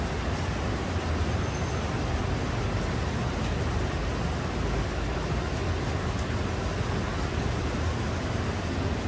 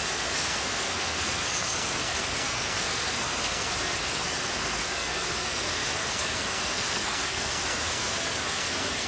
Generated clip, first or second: second